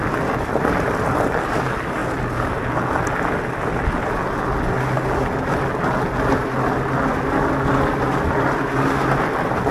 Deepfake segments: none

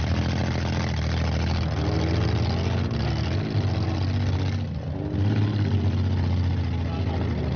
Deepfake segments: none

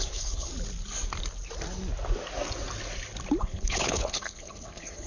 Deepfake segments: 0.0-0.5 (codec, HILCodec); 3.4-5.1

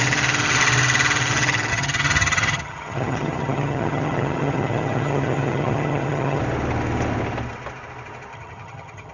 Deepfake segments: 1.7-6.4 (vocoder, HiFi-GAN); 8.3-9.1

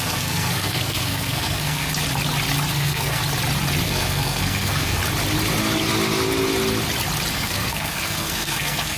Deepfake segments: 0.0-1.9 (codec, SNAC); 2.7-3.2; 3.8-5.0; 7.3-9.0

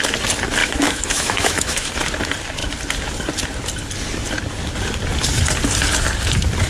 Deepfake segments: 0.6-1.9 (autoencoder, DAC-VAE)

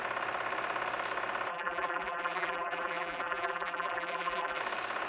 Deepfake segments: 1.5-4.6 (vocoder, BigVGAN v2)